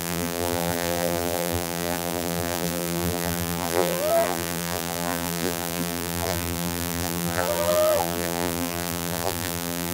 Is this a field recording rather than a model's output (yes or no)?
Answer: no